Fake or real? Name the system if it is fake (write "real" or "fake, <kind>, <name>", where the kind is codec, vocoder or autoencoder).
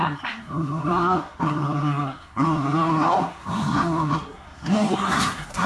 fake, codec, SNAC